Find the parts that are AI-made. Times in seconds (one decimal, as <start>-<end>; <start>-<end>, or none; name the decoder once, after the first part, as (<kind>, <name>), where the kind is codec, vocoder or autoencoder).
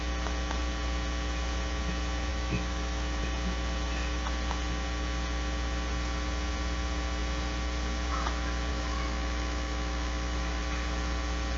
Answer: 2.3-3.2 (autoencoder, DAC-VAE); 8.7-10.6